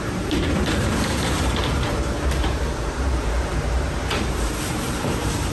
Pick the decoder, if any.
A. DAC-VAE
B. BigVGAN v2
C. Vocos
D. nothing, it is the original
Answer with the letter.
B